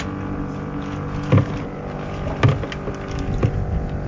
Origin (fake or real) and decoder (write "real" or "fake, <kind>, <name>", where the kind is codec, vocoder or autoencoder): real